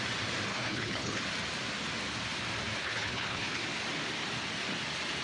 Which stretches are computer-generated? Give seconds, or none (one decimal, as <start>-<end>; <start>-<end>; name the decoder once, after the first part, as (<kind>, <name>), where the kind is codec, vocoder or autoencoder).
0.5-1.2 (codec, HILCodec); 2.8-3.6